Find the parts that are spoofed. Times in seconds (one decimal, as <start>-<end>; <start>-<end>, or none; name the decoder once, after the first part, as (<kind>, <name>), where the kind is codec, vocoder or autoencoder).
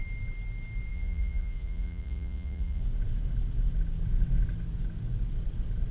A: 0.9-2.8 (vocoder, Vocos)